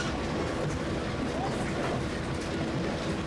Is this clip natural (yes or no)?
yes